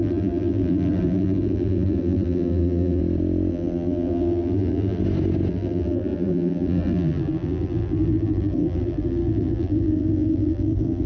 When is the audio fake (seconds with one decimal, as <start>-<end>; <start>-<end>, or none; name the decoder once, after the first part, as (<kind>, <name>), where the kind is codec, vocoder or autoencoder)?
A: 0.0-3.0 (vocoder, BigVGAN v2); 3.5-5.0; 5.5-11.1